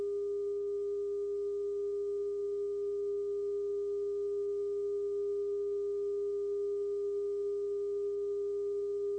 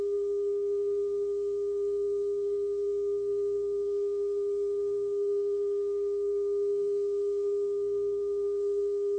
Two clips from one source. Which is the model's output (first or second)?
second